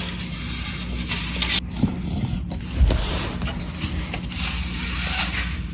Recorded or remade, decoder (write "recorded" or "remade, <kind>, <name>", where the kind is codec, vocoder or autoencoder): recorded